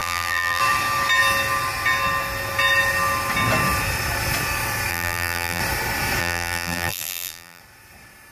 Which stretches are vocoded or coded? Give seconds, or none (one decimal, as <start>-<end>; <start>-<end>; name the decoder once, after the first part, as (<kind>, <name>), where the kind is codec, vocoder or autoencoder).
0.0-0.6 (vocoder, BigVGAN v2); 4.9-5.6; 6.2-7.6